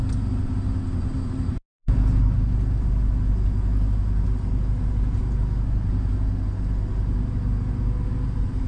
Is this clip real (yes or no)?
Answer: yes